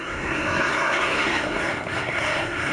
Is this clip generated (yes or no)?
yes